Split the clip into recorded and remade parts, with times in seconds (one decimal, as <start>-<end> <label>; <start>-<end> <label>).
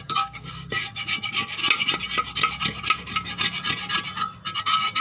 0.0-1.6 remade; 1.6-4.6 recorded; 4.6-5.0 remade